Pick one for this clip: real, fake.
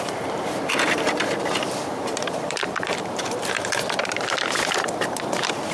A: fake